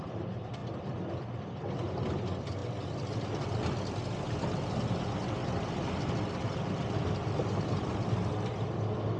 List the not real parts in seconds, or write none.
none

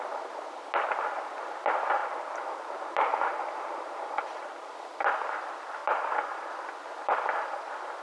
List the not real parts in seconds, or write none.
2.0-4.7 (vocoder, BigVGAN v2); 5.8-6.5

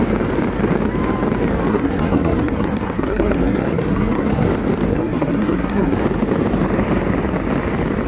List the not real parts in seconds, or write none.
1.7-4.5 (codec, SNAC); 4.9-6.0

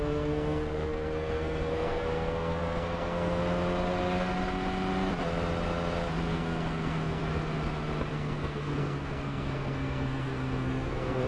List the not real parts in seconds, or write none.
0.0-3.4 (codec, SNAC); 6.3-7.2; 8.1-11.3

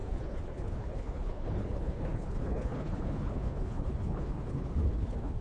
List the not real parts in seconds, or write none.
0.0-5.4 (codec, HILCodec)

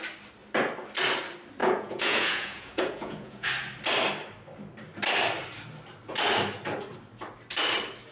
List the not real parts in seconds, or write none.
1.6-3.5 (vocoder, Vocos)